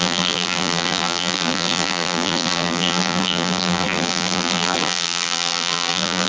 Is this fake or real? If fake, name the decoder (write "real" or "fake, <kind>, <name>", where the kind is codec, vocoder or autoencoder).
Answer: fake, vocoder, BigVGAN v2